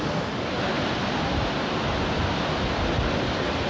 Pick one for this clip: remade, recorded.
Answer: recorded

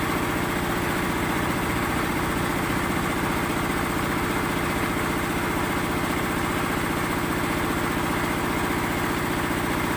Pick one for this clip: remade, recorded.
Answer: recorded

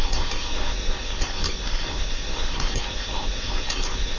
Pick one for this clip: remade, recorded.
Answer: remade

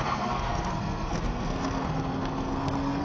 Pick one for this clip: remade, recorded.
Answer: remade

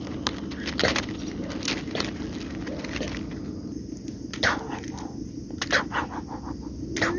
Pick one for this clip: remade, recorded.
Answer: recorded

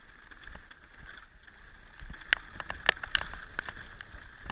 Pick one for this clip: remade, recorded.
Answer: recorded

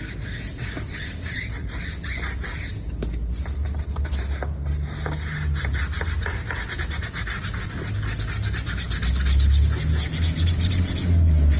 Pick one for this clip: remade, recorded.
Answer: recorded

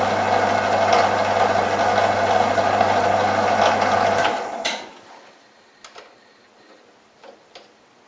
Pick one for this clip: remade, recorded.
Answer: recorded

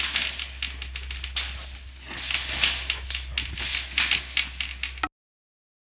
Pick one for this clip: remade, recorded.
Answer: recorded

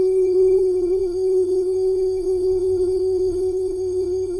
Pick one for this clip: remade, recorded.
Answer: remade